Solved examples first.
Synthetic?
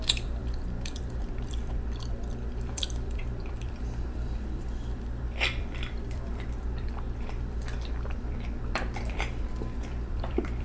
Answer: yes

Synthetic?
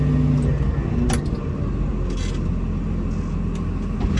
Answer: no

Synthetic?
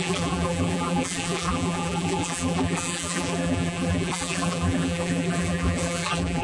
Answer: yes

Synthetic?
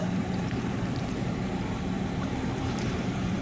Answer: yes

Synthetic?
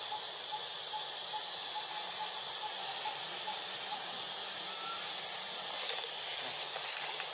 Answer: no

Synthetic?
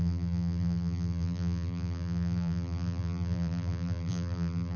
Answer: yes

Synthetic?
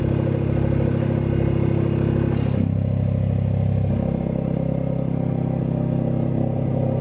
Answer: no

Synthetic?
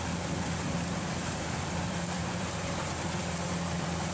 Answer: yes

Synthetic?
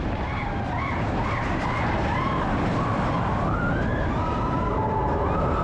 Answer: no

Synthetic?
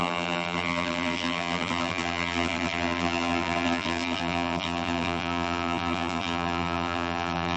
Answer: yes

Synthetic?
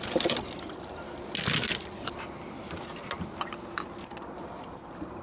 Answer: no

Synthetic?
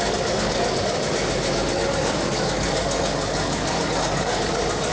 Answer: yes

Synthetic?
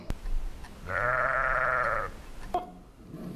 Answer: no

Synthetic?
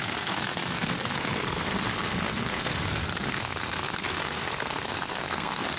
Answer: yes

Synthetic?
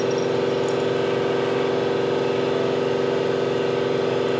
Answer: no